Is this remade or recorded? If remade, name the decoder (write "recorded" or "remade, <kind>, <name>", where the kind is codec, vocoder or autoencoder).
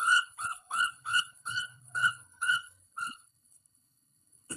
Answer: remade, codec, HILCodec